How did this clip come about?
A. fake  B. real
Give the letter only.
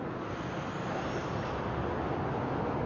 B